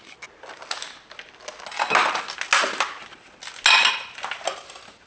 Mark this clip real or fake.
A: real